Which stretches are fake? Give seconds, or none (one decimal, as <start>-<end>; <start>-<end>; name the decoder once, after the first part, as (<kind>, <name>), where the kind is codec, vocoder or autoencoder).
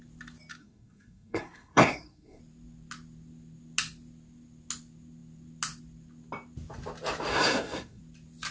0.6-2.4 (codec, SNAC); 7.3-8.0